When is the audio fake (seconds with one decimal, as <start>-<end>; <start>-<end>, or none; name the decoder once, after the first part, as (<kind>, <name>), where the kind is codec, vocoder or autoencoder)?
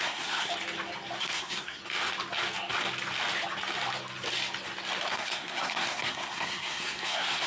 0.0-0.5 (codec, SNAC); 1.2-1.8; 5.1-7.5